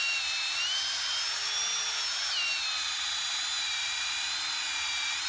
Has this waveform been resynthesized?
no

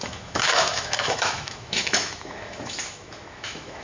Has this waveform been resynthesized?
yes